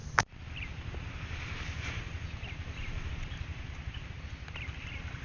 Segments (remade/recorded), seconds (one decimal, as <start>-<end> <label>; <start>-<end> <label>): 0.0-5.2 recorded